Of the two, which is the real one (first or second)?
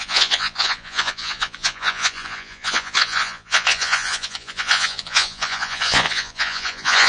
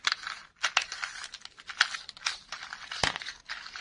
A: second